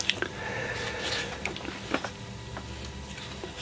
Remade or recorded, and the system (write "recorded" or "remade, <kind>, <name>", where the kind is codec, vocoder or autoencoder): recorded